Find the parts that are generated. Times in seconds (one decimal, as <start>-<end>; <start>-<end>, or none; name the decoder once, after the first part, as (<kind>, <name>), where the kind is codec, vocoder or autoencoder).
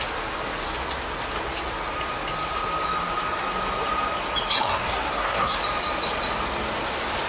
4.5-5.6 (codec, SNAC)